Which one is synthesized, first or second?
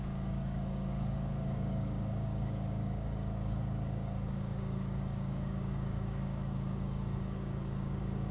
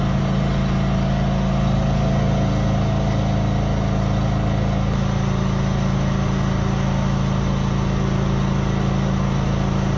first